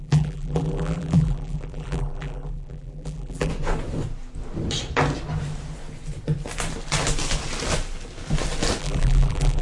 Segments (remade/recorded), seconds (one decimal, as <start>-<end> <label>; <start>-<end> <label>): 0.0-3.5 remade; 3.5-8.8 recorded; 8.8-9.6 remade